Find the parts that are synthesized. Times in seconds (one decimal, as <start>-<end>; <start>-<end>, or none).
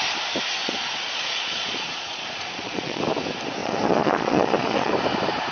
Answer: 0.6-3.0; 3.6-4.9